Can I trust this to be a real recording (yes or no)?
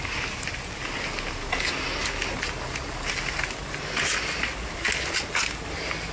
yes